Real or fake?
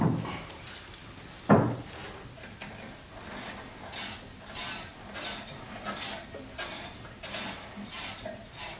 real